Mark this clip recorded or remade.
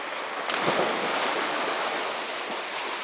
recorded